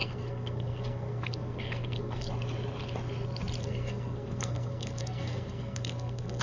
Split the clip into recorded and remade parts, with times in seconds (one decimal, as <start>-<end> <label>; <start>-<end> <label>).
0.0-2.3 remade; 2.3-3.6 recorded; 3.6-6.4 remade